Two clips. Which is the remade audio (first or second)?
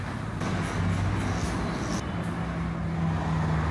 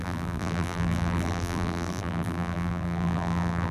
second